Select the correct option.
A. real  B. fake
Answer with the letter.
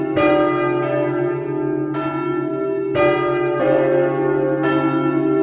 A